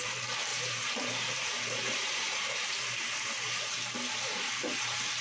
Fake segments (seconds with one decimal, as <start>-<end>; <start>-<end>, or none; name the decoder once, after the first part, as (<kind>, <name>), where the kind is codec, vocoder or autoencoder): 0.5-3.6 (vocoder, BigVGAN v2); 4.3-5.2